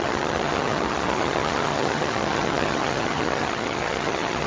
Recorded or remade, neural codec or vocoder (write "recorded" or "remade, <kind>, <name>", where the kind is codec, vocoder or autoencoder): remade, vocoder, HiFi-GAN